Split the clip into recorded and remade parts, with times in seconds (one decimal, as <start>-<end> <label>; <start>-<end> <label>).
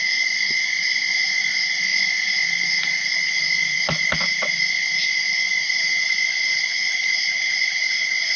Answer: 0.0-8.4 recorded